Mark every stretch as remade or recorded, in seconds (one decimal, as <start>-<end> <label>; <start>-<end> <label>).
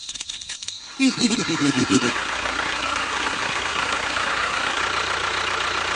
0.0-4.8 remade; 4.8-6.0 recorded